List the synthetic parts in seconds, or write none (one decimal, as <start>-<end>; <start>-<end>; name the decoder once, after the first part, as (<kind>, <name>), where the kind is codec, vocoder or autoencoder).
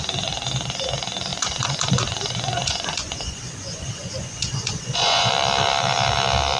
1.3-5.3 (vocoder, Vocos)